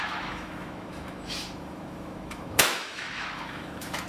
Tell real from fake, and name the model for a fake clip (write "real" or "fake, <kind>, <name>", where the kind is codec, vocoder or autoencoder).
fake, autoencoder, DAC-VAE